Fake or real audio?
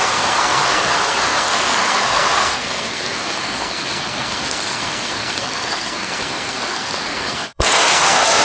fake